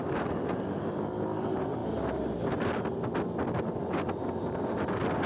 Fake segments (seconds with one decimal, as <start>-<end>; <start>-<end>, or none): none